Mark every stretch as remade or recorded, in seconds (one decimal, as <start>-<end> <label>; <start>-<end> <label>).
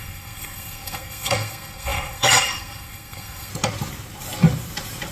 0.0-3.5 remade; 3.5-5.1 recorded